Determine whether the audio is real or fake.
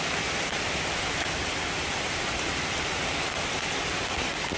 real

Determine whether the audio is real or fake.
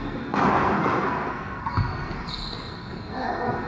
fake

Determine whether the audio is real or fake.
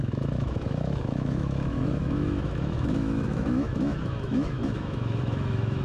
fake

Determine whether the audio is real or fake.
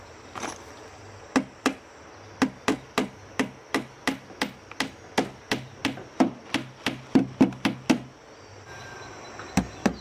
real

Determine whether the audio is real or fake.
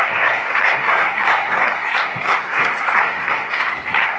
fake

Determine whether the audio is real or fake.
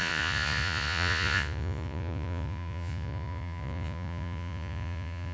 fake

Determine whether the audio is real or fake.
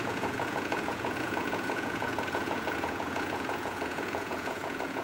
fake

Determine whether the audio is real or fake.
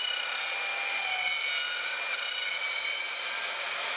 real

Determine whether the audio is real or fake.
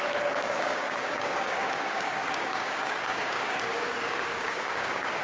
fake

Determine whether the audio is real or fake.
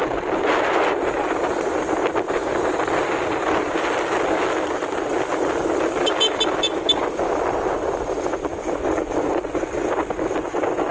real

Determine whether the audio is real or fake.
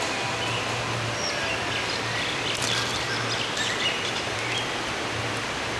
real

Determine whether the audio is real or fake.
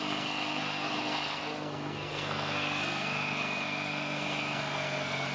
fake